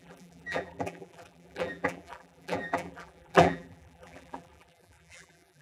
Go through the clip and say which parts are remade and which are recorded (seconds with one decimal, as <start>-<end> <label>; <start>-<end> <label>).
0.0-5.6 remade